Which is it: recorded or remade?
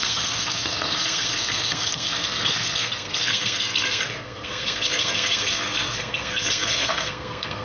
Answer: remade